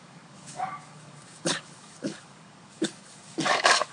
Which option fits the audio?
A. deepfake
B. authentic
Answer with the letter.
A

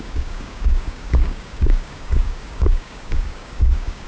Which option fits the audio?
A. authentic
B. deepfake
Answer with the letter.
B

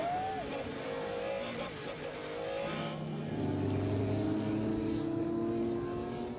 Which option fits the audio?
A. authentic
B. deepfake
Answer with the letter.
A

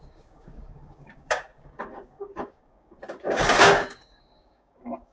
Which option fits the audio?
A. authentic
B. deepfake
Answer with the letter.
B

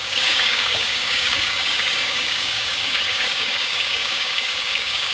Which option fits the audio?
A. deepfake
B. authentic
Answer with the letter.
A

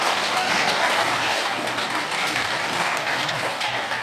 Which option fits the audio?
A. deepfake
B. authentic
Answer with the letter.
A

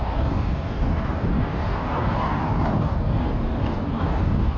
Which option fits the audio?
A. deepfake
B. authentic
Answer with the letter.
A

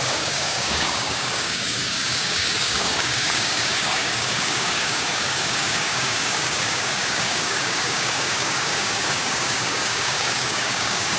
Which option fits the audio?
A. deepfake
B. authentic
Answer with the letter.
A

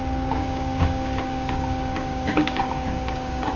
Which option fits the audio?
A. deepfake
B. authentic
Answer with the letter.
A